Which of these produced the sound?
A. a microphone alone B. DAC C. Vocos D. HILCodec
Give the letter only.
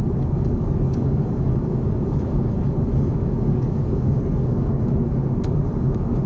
B